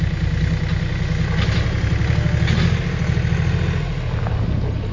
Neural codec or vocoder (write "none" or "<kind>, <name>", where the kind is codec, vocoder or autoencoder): none